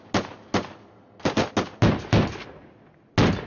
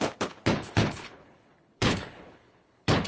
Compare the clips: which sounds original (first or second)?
first